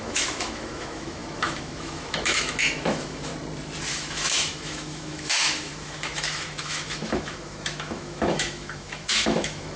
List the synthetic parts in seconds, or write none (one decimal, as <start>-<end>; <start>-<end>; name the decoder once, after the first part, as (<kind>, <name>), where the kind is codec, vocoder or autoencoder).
0.0-3.3 (autoencoder, DAC-VAE); 3.9-9.8